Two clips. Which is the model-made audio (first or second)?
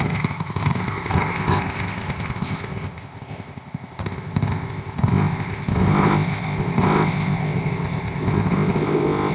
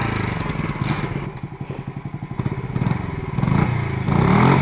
first